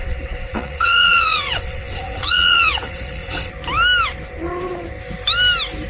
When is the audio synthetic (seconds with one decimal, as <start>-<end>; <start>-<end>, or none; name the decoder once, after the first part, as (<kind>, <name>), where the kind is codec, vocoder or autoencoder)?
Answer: 0.0-3.5 (vocoder, WaveNeXt)